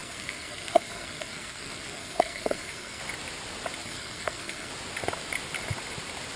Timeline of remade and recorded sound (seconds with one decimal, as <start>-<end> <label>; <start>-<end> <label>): 0.0-3.0 remade; 3.0-3.8 recorded; 3.8-4.7 remade; 4.7-6.4 recorded